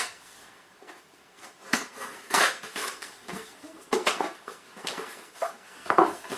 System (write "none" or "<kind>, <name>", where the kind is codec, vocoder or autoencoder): codec, SNAC